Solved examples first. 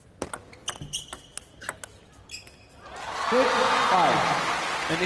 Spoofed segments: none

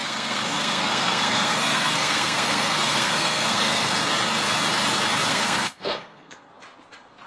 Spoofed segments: 0.0-3.9 (codec, SNAC); 5.3-6.5

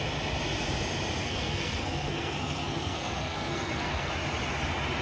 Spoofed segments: 1.2-4.1 (codec, SNAC)

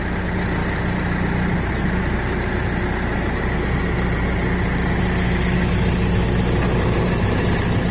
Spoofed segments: none

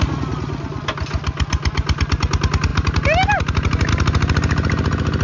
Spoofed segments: none

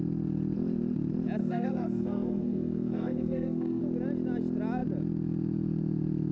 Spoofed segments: 1.4-3.8 (codec, SNAC)

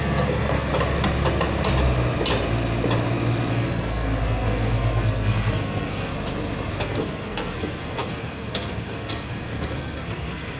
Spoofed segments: 0.0-0.7 (codec, SNAC); 3.5-6.1; 6.7-10.6

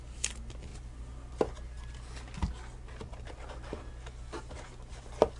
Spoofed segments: none